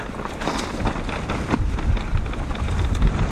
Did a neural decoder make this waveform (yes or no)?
no